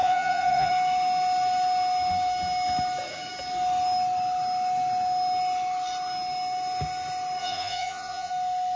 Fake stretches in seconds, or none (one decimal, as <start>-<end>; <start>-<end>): 0.0-0.7; 7.4-8.3